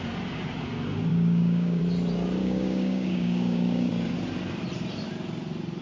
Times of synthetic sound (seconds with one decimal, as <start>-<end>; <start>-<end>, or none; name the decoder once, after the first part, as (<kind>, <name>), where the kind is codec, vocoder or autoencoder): 1.1-1.8 (codec, DAC); 2.4-3.9